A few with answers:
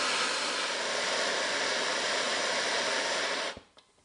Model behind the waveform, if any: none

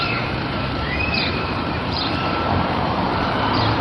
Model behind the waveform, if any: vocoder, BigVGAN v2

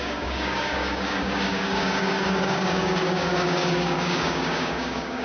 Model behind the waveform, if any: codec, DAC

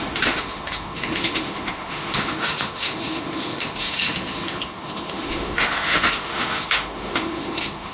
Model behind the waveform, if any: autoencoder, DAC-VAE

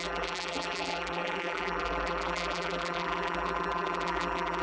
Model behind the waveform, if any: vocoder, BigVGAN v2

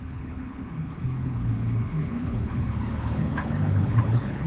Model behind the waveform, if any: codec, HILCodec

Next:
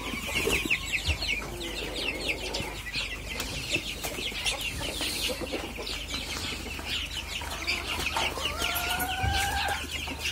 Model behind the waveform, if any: none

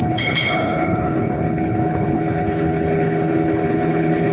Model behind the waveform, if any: codec, HILCodec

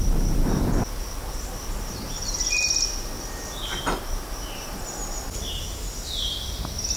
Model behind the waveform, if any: none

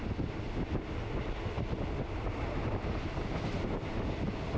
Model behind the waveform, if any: none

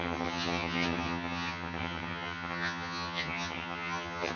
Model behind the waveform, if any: vocoder, HiFi-GAN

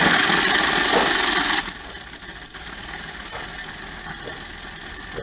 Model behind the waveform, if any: none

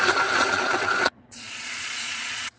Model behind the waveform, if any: vocoder, Vocos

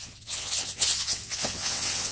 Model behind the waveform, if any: vocoder, WaveNeXt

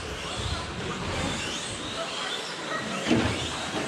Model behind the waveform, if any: none